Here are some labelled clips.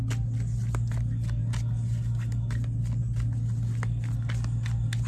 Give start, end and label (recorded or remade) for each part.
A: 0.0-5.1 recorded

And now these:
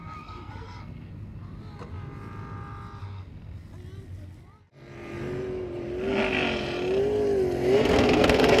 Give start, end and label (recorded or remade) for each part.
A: 0.0-1.4 remade; 1.4-3.0 recorded; 3.0-3.7 remade; 3.7-7.9 recorded; 7.9-8.6 remade

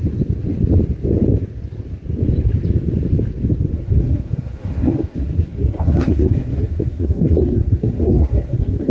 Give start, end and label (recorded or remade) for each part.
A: 0.0-3.7 recorded; 3.7-8.9 remade